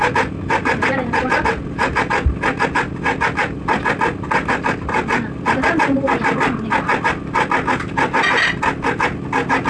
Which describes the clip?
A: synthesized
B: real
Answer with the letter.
B